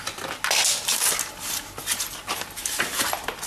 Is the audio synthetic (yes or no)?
no